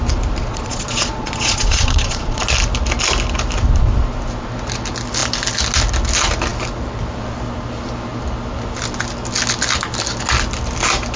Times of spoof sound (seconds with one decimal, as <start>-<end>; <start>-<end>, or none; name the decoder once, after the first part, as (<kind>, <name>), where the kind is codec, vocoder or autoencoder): 0.5-2.4 (vocoder, Vocos)